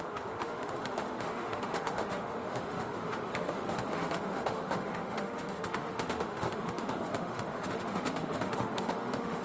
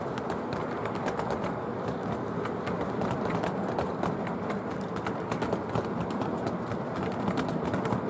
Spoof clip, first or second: first